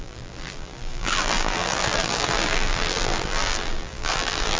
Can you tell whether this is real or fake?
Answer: fake